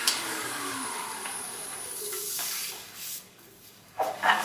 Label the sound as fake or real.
fake